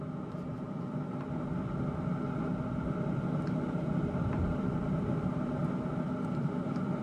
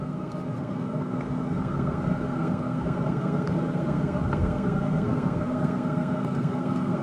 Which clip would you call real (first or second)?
first